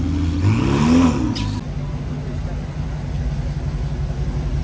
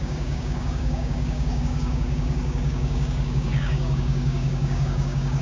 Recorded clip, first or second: first